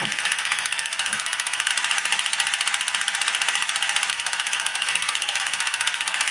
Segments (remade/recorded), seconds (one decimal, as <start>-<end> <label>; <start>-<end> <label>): 0.0-1.7 remade; 1.7-4.1 recorded; 4.1-6.3 remade